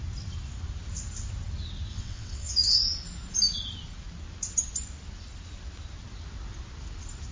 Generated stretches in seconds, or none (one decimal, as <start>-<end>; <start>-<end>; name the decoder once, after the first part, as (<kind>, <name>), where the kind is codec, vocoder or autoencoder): 1.9-2.5 (vocoder, WaveNeXt)